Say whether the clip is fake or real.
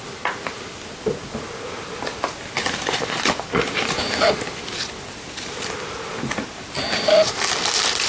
real